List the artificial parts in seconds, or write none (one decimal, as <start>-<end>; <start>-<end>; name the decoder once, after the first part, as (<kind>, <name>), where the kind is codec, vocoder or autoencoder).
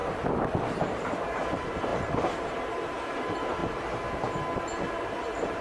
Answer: 0.0-3.6 (vocoder, BigVGAN v2); 4.9-5.6